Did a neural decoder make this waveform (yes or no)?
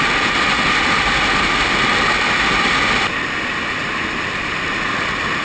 no